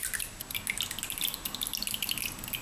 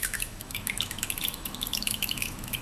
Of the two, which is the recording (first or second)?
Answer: first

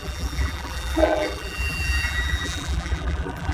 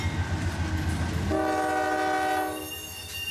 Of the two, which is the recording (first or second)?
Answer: second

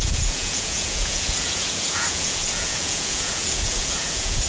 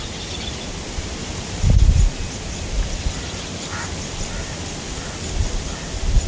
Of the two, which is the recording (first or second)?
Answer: second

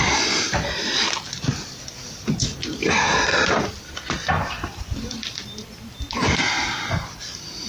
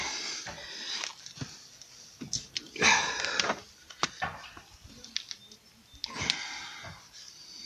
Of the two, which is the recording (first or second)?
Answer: second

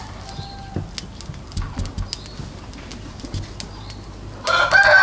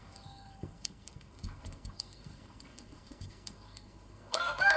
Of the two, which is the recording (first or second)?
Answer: first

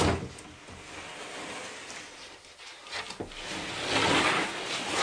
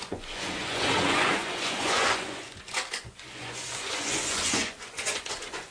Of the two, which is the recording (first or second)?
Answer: first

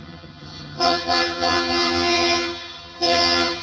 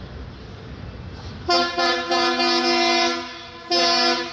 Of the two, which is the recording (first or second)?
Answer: second